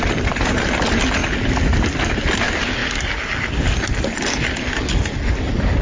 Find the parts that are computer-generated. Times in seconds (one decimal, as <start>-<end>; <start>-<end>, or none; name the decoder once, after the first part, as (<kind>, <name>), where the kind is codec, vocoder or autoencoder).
none